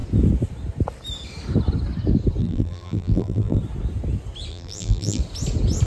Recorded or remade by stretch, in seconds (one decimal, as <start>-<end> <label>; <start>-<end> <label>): 0.0-2.4 recorded; 2.4-3.6 remade; 3.6-4.5 recorded; 4.5-5.2 remade; 5.2-5.9 recorded